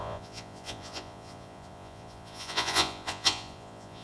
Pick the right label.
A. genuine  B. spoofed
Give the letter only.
B